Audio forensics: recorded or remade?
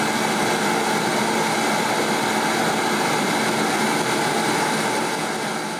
recorded